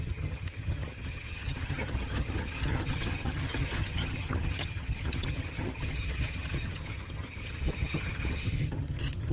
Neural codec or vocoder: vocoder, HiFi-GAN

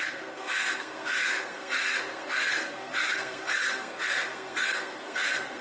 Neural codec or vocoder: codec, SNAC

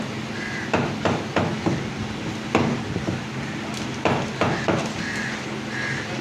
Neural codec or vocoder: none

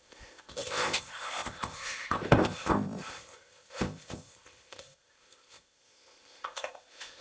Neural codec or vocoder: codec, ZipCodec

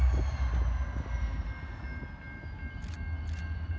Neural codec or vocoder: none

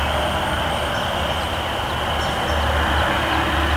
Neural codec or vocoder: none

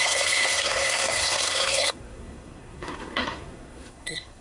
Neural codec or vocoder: codec, SNAC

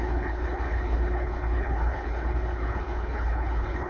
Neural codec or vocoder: codec, HILCodec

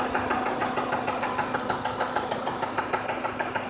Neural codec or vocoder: none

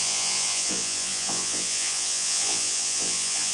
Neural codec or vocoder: vocoder, Vocos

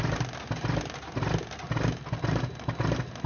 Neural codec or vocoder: none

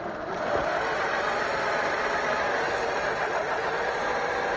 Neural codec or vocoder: none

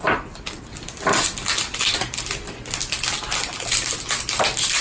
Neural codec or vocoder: none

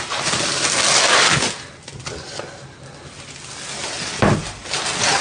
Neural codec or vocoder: none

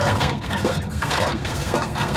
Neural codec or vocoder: codec, SNAC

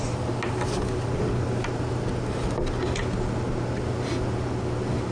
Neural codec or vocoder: none